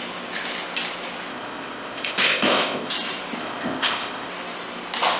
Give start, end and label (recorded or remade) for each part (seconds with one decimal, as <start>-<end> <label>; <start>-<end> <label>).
0.0-1.3 recorded; 1.3-2.9 remade; 2.9-3.4 recorded; 3.4-4.3 remade; 4.3-5.2 recorded